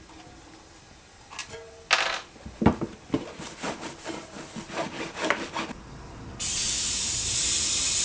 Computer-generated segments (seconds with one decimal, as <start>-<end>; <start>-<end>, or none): none